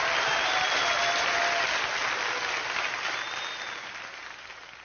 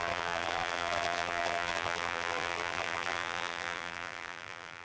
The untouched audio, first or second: first